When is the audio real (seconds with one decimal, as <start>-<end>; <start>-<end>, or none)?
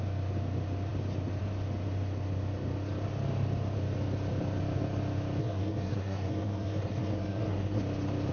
0.0-5.4; 7.8-8.3